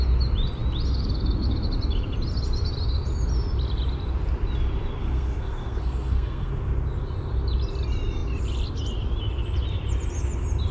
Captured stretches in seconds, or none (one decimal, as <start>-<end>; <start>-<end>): 0.0-5.0; 6.5-10.7